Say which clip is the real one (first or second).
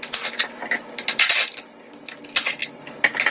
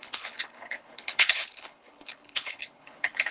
first